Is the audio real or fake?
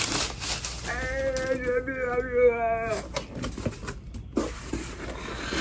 real